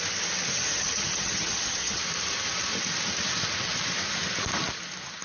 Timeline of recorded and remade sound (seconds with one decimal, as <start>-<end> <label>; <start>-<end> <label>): 0.0-0.7 recorded; 0.7-2.0 remade; 2.0-5.2 recorded